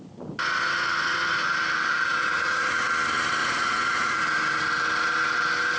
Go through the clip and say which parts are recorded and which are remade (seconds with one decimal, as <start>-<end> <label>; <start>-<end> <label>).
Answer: 0.0-1.9 recorded; 1.9-2.9 remade; 2.9-3.4 recorded; 3.4-4.2 remade; 4.2-5.8 recorded

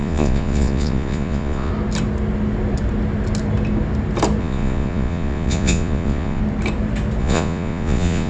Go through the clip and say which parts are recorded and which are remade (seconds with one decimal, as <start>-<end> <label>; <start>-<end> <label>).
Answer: 0.0-1.7 remade; 1.7-4.4 recorded; 4.4-6.4 remade; 6.4-7.2 recorded; 7.2-8.3 remade

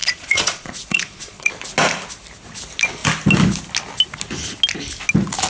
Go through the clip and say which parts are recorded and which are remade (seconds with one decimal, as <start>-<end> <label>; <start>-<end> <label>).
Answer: 0.0-1.5 remade; 1.5-5.5 recorded